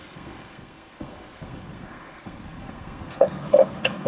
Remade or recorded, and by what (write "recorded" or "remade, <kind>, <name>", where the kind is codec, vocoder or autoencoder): remade, codec, SNAC